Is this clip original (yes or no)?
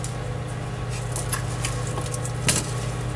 yes